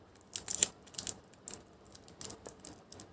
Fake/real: real